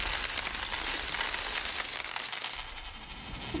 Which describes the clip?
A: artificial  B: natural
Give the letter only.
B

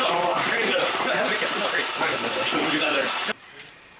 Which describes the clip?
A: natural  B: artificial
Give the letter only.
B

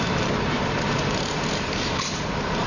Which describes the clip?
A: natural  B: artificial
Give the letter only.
B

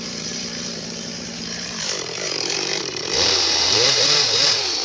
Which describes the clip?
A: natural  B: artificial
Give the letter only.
B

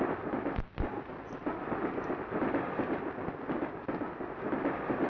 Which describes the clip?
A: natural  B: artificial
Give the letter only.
A